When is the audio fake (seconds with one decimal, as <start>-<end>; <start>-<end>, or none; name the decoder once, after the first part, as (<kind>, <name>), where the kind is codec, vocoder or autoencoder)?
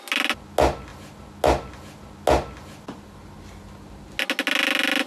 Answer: none